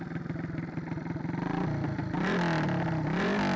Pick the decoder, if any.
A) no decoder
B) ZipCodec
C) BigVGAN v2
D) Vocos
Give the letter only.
A